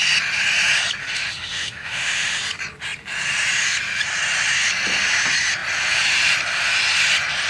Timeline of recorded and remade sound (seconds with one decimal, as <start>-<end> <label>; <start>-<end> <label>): 0.0-1.0 recorded; 1.0-2.4 remade; 2.4-7.5 recorded